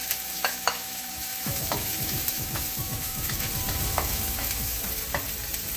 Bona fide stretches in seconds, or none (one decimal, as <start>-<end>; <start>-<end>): 3.5-3.9; 4.8-5.8